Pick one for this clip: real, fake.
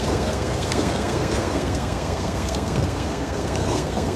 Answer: fake